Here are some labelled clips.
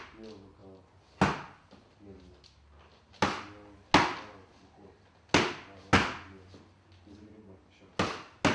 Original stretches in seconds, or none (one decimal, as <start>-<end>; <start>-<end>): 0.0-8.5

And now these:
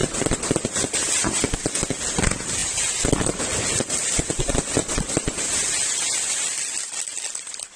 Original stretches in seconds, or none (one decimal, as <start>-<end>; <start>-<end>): 0.0-7.8

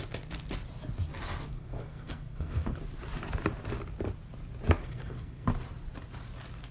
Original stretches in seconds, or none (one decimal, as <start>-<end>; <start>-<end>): 0.0-1.5; 2.8-4.8; 5.5-6.7

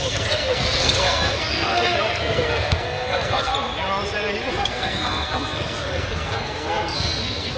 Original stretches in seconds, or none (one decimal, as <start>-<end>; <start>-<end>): 3.5-4.5

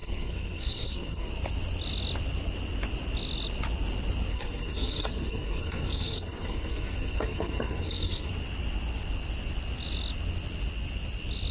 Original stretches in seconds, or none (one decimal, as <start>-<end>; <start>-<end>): 1.3-4.3; 8.3-11.5

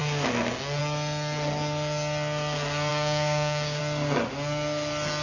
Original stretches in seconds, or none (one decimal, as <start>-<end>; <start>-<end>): 0.0-2.9; 3.8-5.2

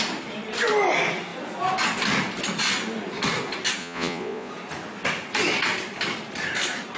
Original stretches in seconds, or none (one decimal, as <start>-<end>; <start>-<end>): 0.0-3.8; 4.5-7.0

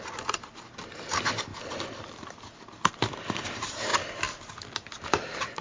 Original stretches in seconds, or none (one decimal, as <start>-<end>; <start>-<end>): 3.9-5.0